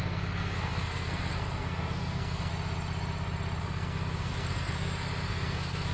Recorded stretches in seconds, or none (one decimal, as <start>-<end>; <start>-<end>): 2.5-3.6